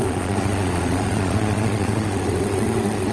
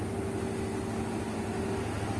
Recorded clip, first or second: second